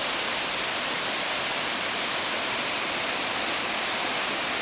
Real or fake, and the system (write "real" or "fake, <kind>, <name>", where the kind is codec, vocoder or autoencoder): fake, vocoder, BigVGAN v2